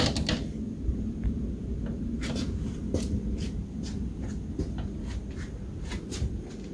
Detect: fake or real real